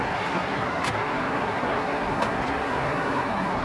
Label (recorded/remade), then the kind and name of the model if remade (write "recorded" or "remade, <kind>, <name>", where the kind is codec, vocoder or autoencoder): remade, codec, SNAC